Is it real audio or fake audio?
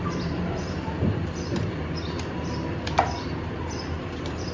fake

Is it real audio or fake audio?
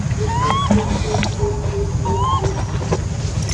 real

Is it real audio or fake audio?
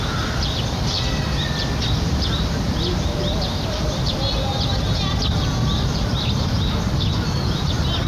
real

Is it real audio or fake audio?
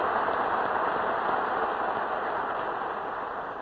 real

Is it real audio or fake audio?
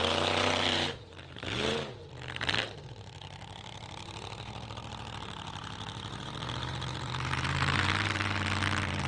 fake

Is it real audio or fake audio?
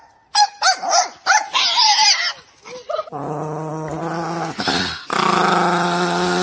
real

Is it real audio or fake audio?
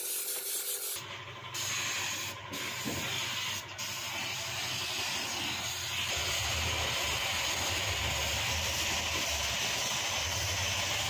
real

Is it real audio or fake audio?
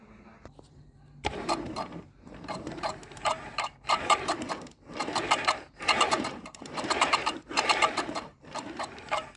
fake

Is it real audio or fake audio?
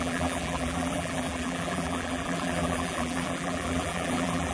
fake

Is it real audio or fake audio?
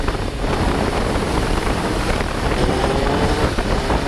fake